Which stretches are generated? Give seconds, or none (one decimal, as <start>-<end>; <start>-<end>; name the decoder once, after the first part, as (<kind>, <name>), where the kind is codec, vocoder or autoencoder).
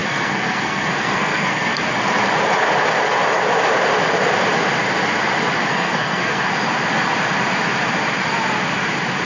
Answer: 0.0-1.8 (codec, SNAC); 5.7-6.5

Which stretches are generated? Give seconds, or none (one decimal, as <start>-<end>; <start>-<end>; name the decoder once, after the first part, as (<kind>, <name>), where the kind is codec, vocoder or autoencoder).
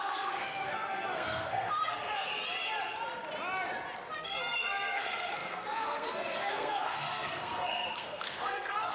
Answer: 0.0-2.3 (codec, SNAC); 4.2-8.9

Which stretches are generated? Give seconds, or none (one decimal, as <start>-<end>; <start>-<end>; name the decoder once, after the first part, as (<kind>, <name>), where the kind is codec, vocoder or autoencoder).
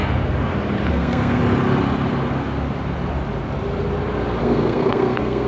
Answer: 0.9-1.4 (codec, SNAC); 4.4-5.5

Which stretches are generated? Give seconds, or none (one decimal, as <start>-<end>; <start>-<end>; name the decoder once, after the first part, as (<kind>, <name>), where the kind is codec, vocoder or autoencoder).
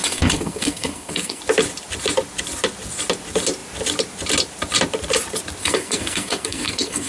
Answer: 0.0-1.4 (codec, SNAC); 5.6-7.1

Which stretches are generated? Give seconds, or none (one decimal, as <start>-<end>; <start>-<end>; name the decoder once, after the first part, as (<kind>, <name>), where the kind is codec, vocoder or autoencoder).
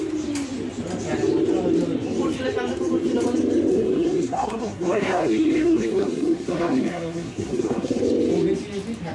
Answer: 3.7-8.0 (codec, SNAC)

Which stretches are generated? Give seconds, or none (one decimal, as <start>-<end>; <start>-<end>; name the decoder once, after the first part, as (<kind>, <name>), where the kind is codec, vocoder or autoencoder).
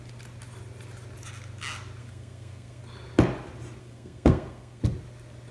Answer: 2.0-2.8 (codec, SNAC); 3.8-4.8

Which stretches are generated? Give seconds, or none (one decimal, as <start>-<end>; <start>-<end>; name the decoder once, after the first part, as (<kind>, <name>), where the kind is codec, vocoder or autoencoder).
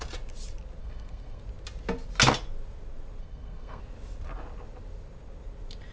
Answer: 0.8-1.4 (codec, SNAC); 3.2-3.8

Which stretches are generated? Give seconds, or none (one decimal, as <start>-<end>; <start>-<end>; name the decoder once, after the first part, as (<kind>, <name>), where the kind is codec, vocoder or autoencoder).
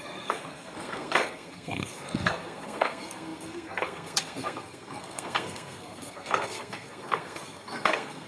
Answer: 0.0-8.3 (codec, SNAC)